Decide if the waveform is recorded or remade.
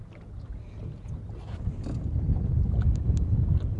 recorded